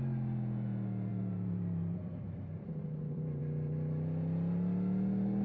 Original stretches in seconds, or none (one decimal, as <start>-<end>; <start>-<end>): 0.0-1.1; 3.4-5.4